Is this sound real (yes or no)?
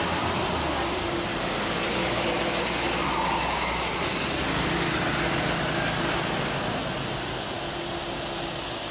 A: yes